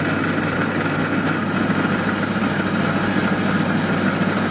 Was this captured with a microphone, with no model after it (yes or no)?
yes